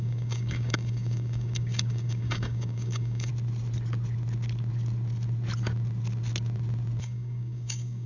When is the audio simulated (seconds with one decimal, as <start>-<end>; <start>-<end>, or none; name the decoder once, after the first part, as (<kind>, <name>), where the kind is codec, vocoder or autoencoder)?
0.0-3.3 (codec, DAC); 7.0-8.1